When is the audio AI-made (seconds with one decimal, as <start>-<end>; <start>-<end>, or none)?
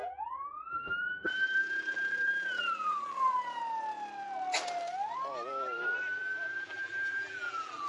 0.0-3.6; 6.6-7.9